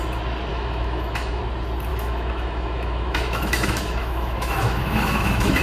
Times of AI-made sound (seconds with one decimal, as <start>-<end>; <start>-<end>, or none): 0.5-1.4; 1.9-5.6